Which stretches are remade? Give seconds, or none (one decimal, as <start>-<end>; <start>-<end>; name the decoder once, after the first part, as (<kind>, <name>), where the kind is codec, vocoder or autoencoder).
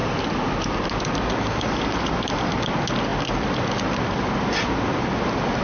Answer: none